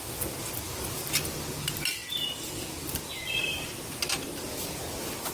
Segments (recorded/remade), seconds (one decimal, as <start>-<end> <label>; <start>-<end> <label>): 0.0-5.3 recorded